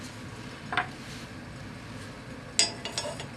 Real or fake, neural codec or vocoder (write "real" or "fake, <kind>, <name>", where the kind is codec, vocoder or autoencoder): real